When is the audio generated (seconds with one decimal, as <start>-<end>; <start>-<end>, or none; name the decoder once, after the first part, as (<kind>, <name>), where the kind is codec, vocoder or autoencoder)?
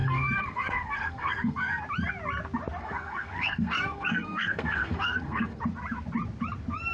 0.0-1.8 (codec, SNAC); 2.8-5.6